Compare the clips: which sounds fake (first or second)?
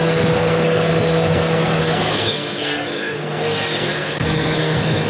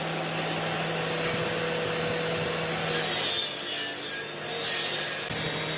first